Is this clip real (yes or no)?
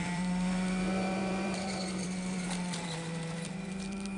no